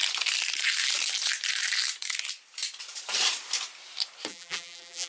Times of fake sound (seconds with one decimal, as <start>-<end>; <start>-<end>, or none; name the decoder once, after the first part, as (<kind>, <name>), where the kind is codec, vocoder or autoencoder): 4.3-5.1 (vocoder, BigVGAN v2)